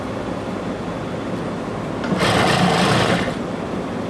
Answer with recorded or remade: recorded